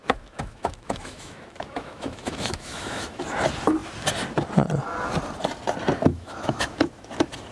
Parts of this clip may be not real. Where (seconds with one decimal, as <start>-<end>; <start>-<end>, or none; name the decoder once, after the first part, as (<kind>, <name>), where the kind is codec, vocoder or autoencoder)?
0.0-3.2 (autoencoder, DAC-VAE); 6.1-7.1